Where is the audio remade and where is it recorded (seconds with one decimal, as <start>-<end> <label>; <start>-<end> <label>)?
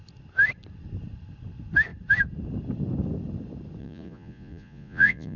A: 0.0-3.8 recorded; 3.8-5.4 remade